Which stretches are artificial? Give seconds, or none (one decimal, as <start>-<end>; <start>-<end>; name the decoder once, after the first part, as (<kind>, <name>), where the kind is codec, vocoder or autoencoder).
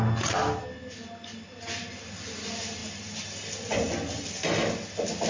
none